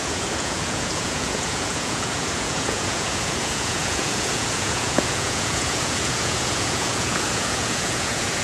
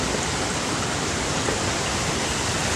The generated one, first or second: first